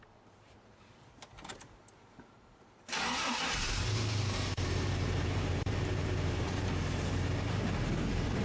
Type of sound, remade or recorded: remade